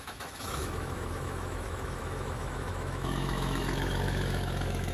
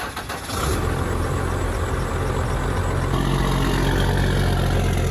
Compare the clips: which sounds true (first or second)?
second